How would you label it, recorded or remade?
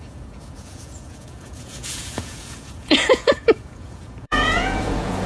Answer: remade